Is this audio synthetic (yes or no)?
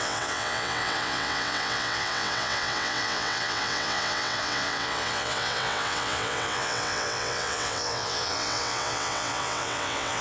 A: yes